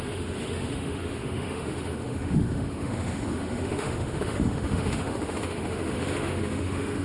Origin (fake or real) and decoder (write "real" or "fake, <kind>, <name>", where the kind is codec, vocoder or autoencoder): fake, autoencoder, DAC-VAE